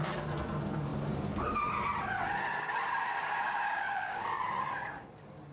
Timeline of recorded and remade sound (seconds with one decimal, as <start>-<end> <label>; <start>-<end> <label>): 0.0-3.1 recorded; 3.1-4.4 remade; 4.4-5.5 recorded